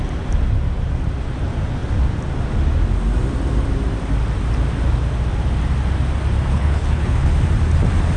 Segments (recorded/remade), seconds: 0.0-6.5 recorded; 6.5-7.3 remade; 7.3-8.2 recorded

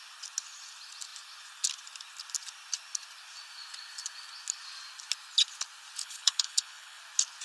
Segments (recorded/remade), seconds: 0.0-6.0 recorded; 6.0-7.0 remade; 7.0-7.4 recorded